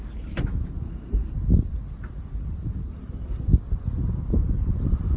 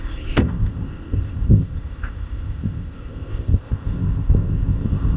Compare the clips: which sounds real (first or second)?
first